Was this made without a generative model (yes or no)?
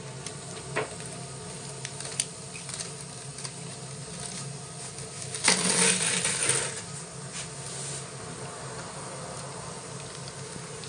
yes